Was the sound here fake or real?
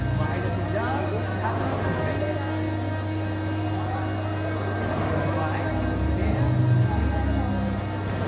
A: real